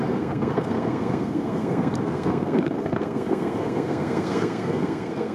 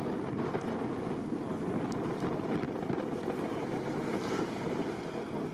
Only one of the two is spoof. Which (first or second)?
first